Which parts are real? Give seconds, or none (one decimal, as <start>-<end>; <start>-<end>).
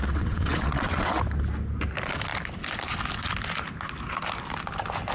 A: 1.2-5.1